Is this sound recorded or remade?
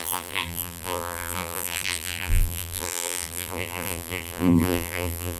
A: remade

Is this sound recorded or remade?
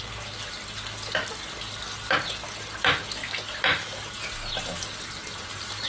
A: recorded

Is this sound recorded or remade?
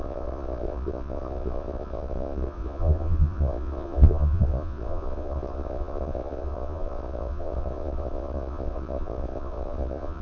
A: remade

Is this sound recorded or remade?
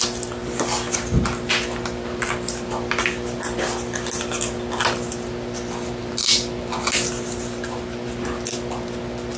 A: recorded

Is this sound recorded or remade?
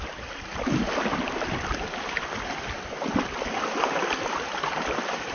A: recorded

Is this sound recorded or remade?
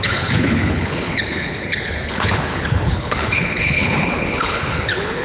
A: remade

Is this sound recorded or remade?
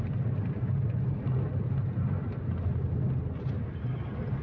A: recorded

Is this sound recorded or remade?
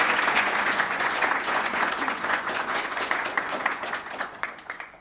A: remade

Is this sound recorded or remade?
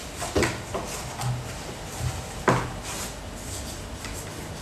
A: recorded